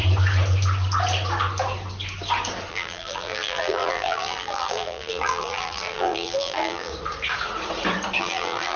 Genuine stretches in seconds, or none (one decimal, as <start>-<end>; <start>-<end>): 0.0-2.7; 6.9-8.2